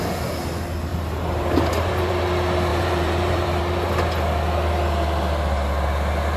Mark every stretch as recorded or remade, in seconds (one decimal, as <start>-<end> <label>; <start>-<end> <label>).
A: 0.0-0.9 recorded; 0.9-2.1 remade; 2.1-2.7 recorded; 2.7-3.6 remade; 3.6-6.4 recorded